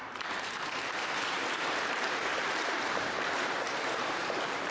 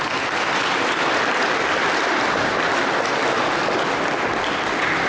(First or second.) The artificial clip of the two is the first